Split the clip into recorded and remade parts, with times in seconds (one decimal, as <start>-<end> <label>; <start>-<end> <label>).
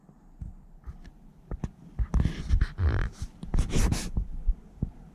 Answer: 0.0-2.8 recorded; 2.8-3.9 remade; 3.9-5.1 recorded